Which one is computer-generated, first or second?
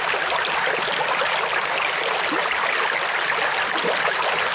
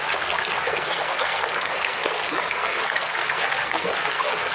second